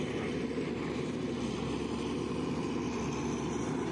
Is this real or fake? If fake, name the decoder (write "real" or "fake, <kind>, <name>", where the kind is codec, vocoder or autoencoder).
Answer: real